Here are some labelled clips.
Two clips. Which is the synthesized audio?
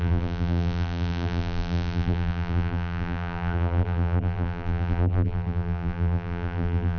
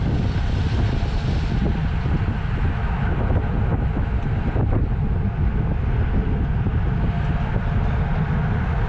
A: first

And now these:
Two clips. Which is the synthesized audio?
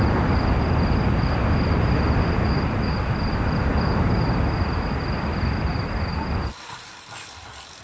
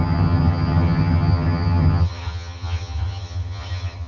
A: second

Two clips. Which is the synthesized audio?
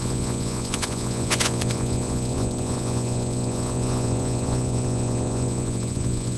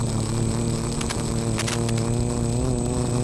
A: first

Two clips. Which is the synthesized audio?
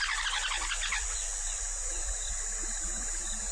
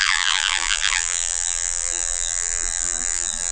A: second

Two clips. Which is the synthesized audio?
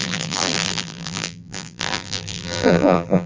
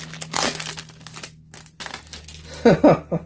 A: first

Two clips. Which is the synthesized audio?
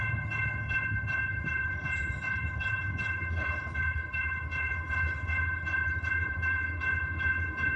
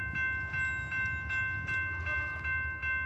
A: first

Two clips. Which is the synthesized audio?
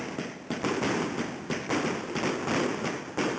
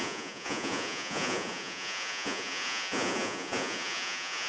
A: second